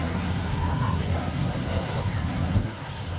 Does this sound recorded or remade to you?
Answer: remade